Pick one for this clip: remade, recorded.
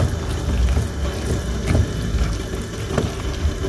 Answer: recorded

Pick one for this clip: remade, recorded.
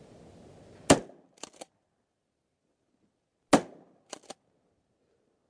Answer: recorded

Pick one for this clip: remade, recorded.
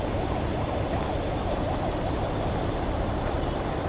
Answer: recorded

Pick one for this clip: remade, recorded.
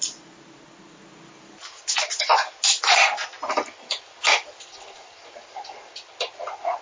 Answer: recorded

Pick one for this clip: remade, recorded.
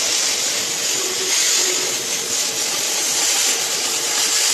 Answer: recorded